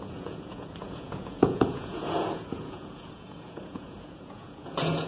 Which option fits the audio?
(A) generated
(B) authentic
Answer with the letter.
A